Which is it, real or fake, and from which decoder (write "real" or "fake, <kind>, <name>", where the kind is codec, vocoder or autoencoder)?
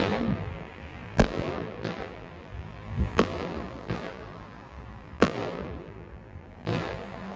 fake, vocoder, BigVGAN v2